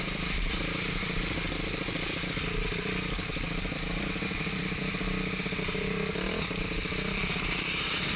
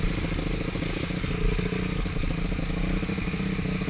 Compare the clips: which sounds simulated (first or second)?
first